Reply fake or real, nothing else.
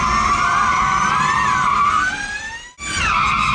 fake